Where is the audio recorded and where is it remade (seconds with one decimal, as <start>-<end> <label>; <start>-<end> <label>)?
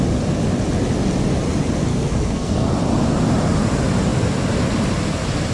0.0-1.9 recorded; 1.9-2.7 remade; 2.7-5.5 recorded